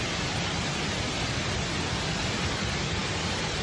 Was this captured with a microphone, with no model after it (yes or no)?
yes